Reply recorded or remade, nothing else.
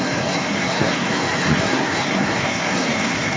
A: remade